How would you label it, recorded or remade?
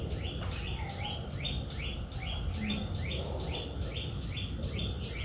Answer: recorded